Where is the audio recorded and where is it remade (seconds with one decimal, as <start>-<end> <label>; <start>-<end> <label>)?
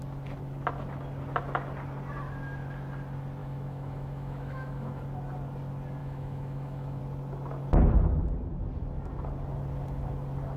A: 0.0-3.4 recorded; 3.4-5.0 remade; 5.0-6.0 recorded; 6.0-7.0 remade; 7.0-10.6 recorded